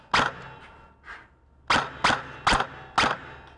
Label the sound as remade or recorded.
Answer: recorded